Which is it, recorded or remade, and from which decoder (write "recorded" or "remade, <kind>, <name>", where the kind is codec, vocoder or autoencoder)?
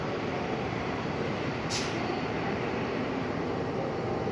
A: remade, vocoder, BigVGAN v2